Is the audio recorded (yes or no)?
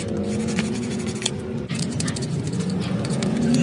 no